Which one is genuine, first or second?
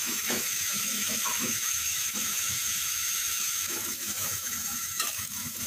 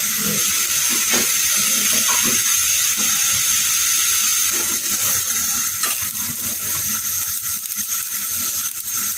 second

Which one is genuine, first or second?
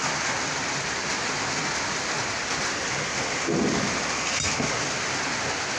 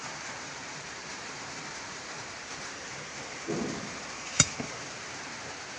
first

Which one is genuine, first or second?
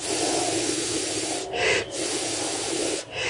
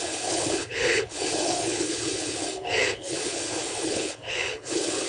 first